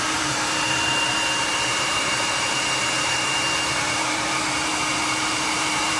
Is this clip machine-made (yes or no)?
yes